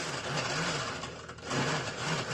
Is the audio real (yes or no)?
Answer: yes